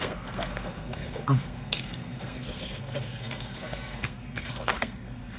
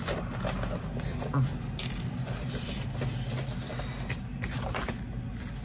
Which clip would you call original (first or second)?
second